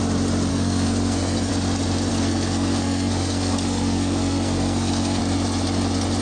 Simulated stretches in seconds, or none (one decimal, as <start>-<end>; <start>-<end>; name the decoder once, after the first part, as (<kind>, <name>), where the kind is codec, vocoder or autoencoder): 0.5-1.5 (codec, SNAC); 2.1-5.2